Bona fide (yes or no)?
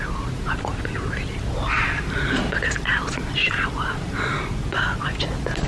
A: yes